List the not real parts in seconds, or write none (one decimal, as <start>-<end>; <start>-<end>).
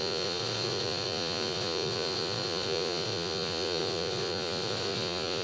0.0-5.4